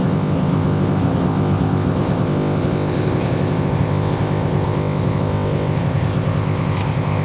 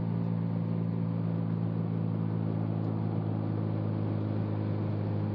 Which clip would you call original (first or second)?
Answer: second